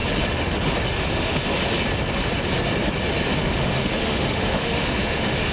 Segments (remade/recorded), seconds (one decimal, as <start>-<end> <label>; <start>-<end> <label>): 0.0-0.9 recorded; 0.9-1.4 remade; 1.4-3.4 recorded; 3.4-5.5 remade